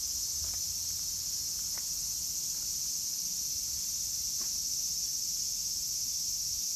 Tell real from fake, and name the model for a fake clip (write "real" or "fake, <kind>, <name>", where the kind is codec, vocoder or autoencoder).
real